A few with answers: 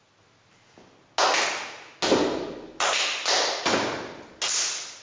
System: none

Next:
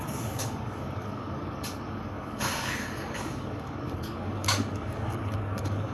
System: codec, DAC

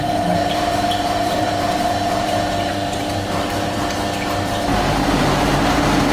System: vocoder, BigVGAN v2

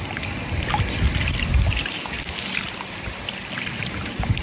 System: none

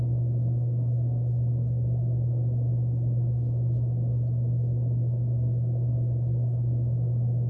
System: none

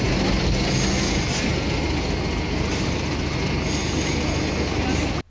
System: none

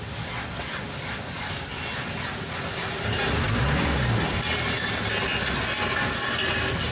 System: none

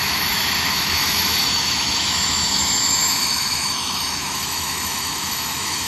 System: autoencoder, DAC-VAE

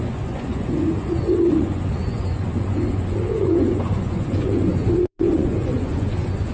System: vocoder, Vocos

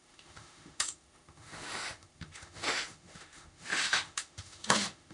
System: autoencoder, DAC-VAE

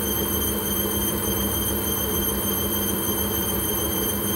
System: vocoder, BigVGAN v2